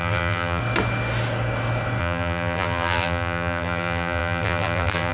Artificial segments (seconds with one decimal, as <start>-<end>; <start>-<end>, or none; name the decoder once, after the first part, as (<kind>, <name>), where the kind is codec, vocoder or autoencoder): 0.0-0.6 (vocoder, BigVGAN v2); 2.0-5.1